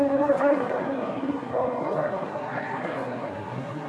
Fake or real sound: fake